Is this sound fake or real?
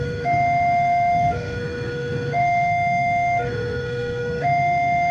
fake